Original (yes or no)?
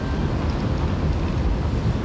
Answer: yes